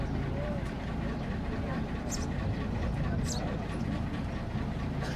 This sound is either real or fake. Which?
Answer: real